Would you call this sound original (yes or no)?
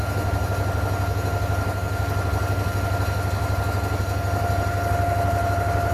yes